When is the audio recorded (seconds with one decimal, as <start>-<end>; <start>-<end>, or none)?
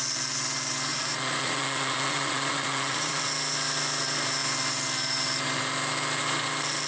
0.0-0.9; 3.2-6.9